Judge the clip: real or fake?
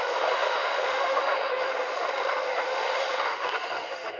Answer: fake